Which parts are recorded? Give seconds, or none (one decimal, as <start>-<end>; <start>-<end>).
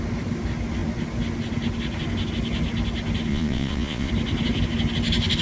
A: 0.0-3.3; 4.1-5.4